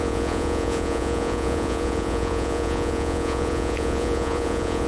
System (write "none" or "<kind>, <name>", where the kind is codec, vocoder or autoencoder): vocoder, Vocos